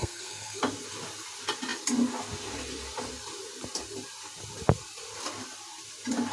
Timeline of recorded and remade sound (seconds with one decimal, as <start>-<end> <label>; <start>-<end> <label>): 0.0-0.6 remade; 0.6-6.3 recorded